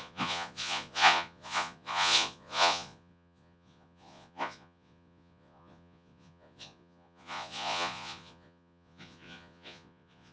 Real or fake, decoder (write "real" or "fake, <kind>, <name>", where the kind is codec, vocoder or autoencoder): fake, vocoder, Vocos